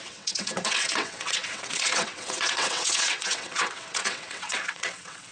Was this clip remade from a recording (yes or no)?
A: yes